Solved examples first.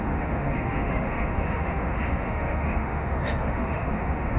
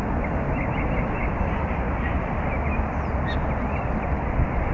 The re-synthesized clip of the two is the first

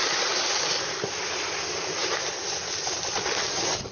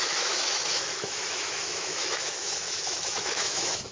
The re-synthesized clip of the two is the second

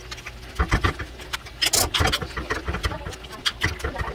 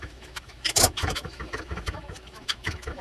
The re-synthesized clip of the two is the second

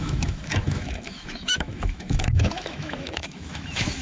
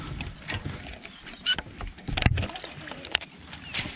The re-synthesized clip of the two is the first